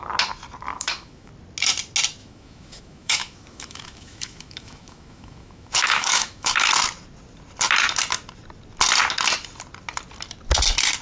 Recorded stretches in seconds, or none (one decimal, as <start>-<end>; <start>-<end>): 0.0-0.7; 1.3-2.2; 6.7-11.0

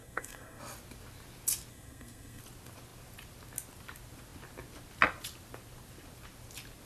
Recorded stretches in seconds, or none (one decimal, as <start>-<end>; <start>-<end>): 0.6-1.7; 2.4-6.9

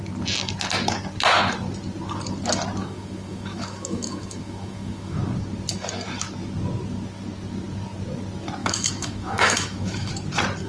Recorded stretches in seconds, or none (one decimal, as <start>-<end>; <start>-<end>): 0.0-2.8; 5.2-8.6; 10.1-10.7

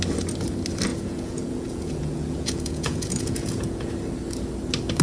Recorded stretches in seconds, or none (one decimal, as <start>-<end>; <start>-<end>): 0.0-0.9; 3.9-5.0

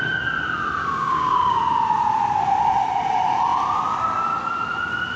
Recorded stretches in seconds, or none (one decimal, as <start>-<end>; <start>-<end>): 0.0-0.8; 1.6-5.2

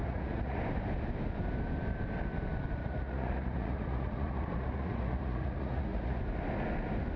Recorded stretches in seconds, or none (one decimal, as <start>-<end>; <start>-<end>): 0.6-2.8; 6.2-7.2

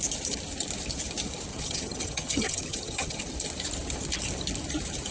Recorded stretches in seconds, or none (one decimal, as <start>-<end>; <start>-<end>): 0.0-1.5; 3.2-5.1

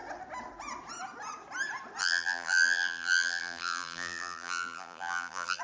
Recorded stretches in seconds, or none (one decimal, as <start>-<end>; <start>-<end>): 0.0-2.0